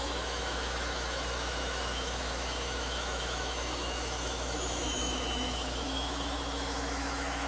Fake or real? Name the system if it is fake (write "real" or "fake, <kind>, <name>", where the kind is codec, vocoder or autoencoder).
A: fake, autoencoder, DAC-VAE